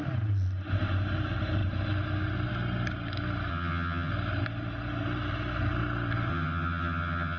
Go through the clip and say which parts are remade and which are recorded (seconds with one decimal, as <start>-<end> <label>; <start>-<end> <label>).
0.0-3.5 recorded; 3.5-4.1 remade; 4.1-6.3 recorded; 6.3-7.4 remade